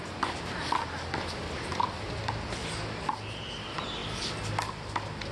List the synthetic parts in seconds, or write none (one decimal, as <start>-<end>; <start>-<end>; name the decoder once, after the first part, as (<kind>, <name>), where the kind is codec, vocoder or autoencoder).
none